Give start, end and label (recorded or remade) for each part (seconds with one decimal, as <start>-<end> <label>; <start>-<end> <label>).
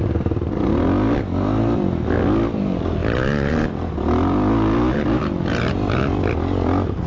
0.0-7.1 recorded